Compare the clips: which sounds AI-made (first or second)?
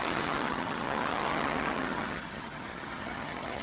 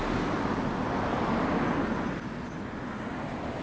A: first